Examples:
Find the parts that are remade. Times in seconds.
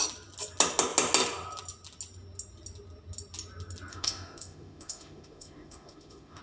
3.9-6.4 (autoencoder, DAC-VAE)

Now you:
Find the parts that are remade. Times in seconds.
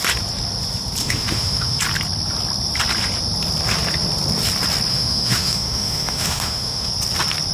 1.0-1.8 (autoencoder, DAC-VAE); 4.9-6.9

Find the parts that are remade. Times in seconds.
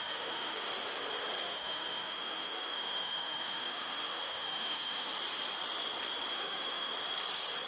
0.0-0.7 (autoencoder, DAC-VAE); 1.4-5.1; 6.3-6.9